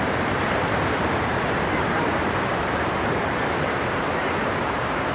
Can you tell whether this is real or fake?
fake